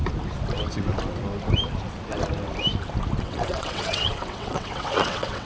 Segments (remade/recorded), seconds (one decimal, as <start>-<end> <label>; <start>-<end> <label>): 0.0-3.2 recorded; 3.2-5.4 remade